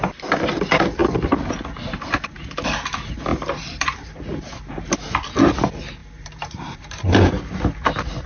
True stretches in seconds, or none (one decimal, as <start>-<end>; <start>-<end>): 0.0-3.3; 4.2-6.0; 7.6-8.3